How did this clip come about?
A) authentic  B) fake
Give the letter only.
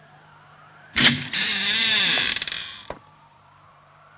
B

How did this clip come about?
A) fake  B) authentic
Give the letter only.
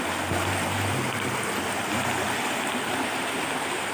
B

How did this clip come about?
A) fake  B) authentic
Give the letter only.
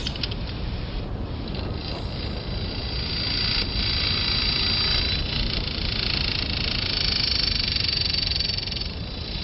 A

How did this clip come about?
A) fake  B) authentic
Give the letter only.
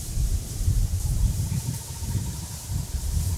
A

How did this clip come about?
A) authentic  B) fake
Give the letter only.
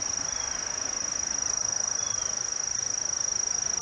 A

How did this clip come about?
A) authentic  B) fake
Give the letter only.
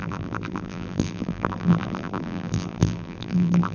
B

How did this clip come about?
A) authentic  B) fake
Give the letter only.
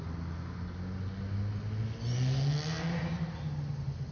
A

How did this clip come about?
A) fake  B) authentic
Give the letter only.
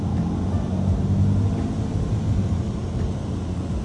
B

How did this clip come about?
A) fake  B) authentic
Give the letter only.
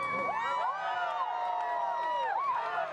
B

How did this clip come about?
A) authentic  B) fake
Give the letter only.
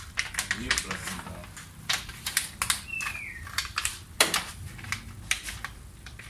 B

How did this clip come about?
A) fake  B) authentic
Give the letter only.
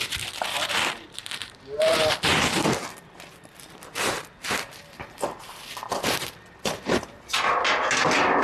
A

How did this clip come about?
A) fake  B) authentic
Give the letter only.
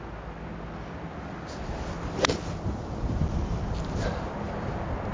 B